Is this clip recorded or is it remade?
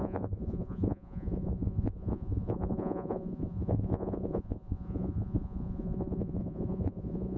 remade